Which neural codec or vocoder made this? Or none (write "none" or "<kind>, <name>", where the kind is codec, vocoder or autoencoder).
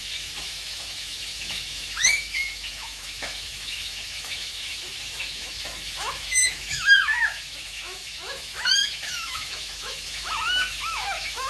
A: autoencoder, DAC-VAE